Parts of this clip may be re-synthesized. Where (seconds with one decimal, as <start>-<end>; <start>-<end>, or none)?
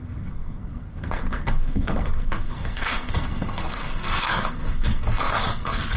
0.0-6.0